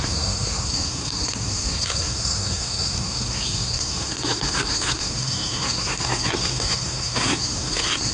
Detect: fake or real fake